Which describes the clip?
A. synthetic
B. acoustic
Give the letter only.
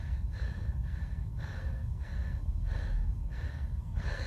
A